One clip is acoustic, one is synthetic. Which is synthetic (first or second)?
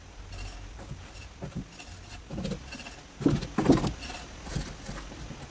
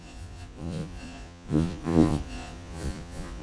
second